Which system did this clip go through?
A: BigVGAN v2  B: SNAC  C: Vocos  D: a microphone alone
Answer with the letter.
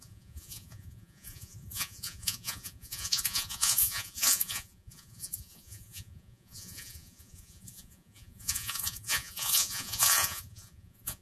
C